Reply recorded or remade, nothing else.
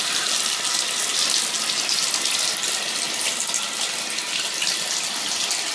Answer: recorded